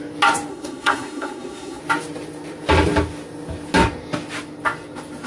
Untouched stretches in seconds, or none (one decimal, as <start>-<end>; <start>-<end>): 0.0-0.5; 1.8-5.3